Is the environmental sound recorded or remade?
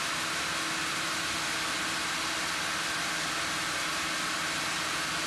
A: recorded